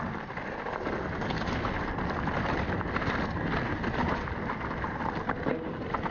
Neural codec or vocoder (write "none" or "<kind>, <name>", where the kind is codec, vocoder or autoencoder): none